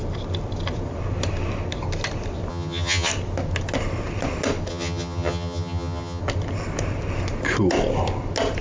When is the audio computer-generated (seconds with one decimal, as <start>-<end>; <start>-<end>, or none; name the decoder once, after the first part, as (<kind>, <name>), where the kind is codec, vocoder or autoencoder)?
2.5-3.1 (vocoder, HiFi-GAN); 4.7-6.2